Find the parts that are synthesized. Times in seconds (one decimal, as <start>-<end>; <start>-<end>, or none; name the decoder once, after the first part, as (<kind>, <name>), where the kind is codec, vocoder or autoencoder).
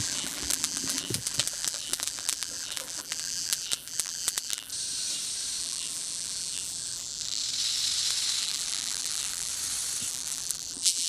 0.0-4.7 (vocoder, BigVGAN v2); 5.6-7.4; 8.4-9.5; 10.1-11.1